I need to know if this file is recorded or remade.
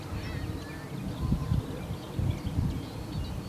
recorded